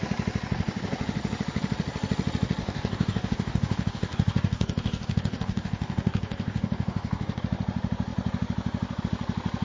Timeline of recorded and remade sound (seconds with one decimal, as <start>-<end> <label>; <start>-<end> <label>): 0.0-2.6 recorded; 2.6-7.4 remade; 7.4-9.6 recorded